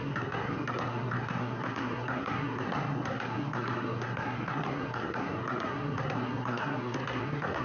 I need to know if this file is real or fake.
fake